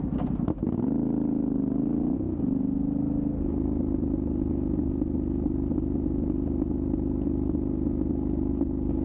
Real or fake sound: real